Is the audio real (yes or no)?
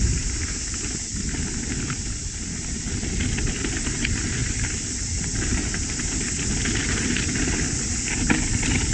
yes